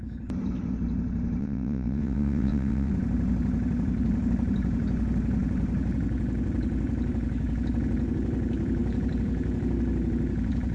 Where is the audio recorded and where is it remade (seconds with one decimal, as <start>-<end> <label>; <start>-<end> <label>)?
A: 0.0-1.4 recorded; 1.4-2.9 remade; 2.9-10.7 recorded